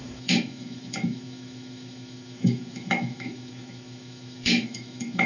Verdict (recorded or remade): remade